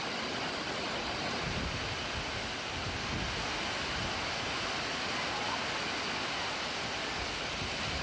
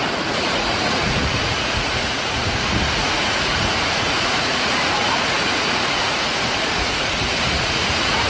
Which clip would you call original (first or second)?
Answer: first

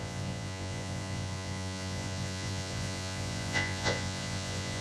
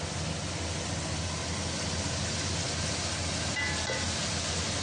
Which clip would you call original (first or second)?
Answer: second